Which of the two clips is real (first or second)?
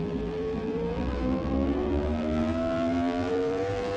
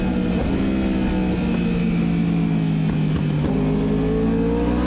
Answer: second